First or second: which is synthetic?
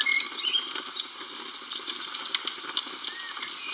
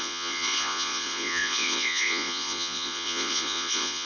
second